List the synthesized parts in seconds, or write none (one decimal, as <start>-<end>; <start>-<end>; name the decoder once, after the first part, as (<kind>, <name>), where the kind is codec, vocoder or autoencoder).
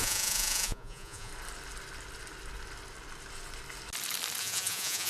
0.0-1.3 (vocoder, Vocos); 4.4-5.1